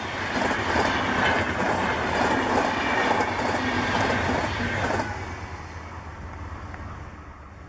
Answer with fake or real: real